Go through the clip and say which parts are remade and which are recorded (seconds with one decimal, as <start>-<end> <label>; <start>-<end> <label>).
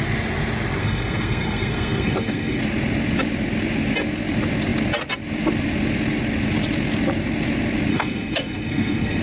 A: 0.0-0.8 recorded; 0.8-2.6 remade; 2.6-7.9 recorded; 7.9-9.2 remade